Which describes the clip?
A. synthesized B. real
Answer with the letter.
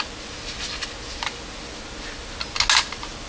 B